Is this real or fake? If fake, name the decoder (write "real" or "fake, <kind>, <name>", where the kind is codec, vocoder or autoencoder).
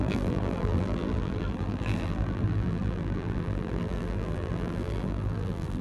fake, vocoder, BigVGAN v2